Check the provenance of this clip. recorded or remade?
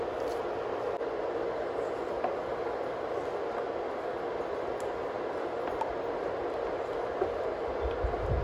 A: recorded